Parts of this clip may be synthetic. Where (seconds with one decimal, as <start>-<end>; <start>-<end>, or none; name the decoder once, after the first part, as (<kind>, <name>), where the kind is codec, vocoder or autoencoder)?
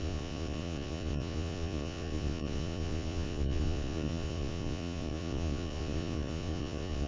0.0-7.1 (vocoder, Vocos)